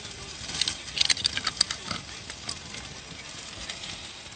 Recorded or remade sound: recorded